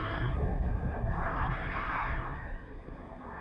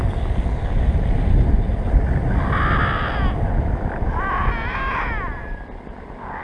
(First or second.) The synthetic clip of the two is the first